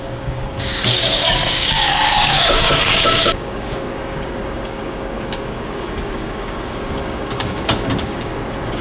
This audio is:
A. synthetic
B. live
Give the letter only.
A